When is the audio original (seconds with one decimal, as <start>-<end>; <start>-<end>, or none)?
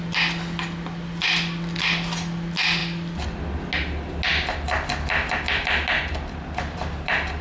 0.0-7.4